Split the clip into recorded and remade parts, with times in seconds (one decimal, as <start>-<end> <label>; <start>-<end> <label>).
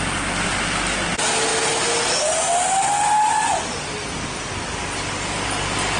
0.0-6.0 recorded